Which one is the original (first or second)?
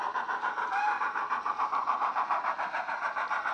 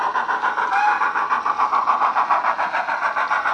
second